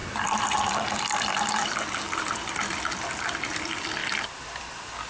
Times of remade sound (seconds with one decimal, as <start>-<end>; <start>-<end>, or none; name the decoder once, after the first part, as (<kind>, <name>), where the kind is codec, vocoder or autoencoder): none